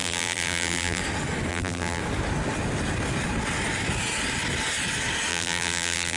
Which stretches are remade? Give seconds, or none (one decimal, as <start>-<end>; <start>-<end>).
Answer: 0.0-1.0; 1.5-2.0; 5.3-6.2